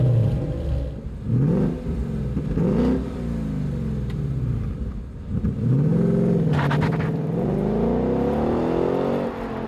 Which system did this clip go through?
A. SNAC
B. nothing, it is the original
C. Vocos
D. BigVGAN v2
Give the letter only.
B